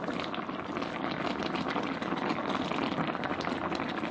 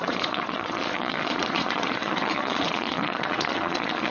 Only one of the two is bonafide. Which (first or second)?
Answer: first